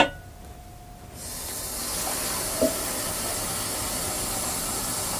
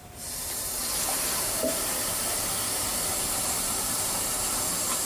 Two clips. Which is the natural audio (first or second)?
first